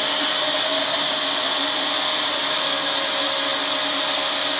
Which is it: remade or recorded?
recorded